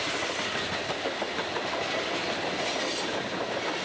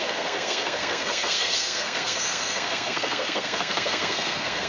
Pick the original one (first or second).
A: first